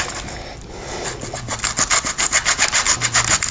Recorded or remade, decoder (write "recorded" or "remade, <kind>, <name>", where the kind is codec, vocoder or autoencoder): recorded